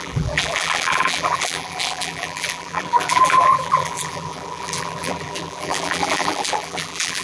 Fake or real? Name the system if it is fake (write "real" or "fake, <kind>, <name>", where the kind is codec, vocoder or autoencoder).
fake, vocoder, BigVGAN v2